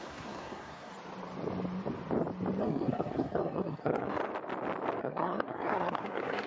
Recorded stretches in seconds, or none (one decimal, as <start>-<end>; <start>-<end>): 0.9-2.6; 4.2-5.0